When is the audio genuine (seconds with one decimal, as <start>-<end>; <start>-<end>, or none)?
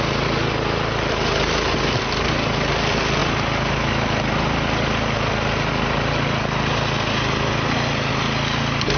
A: 0.0-9.0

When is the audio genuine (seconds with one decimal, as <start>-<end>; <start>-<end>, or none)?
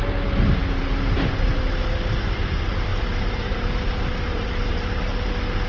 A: 0.0-0.6; 1.6-2.9; 5.3-5.7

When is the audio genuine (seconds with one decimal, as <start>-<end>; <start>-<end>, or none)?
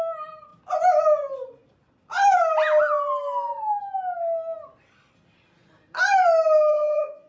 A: 0.0-6.7